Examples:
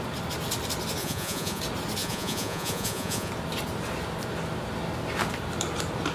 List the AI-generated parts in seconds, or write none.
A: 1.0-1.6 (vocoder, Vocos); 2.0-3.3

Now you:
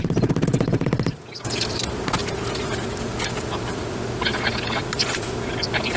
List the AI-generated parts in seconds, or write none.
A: none

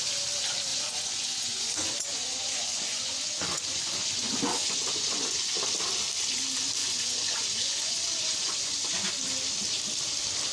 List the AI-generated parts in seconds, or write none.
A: 0.7-5.5 (vocoder, Vocos); 6.8-9.1

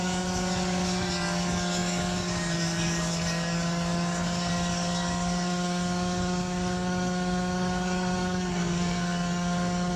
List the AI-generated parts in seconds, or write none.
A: 0.0-10.0 (codec, DAC)

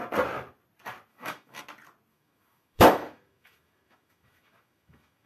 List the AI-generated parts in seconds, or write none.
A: 1.1-1.6 (autoencoder, DAC-VAE); 2.1-5.3

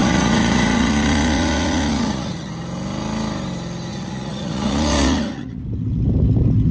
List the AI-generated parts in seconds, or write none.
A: 0.0-2.5 (vocoder, Vocos); 3.9-5.6

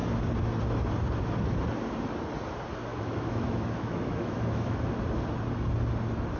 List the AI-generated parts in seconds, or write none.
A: 2.9-4.9 (autoencoder, DAC-VAE)